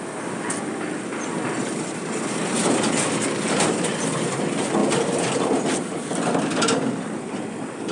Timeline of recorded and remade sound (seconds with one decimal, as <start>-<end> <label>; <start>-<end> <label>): 0.0-7.9 recorded